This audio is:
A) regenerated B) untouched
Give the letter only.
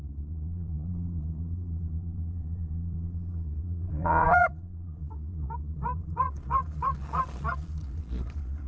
A